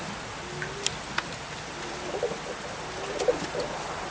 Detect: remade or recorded recorded